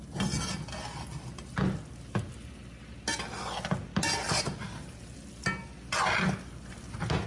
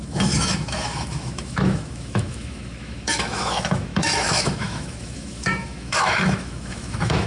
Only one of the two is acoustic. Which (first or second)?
first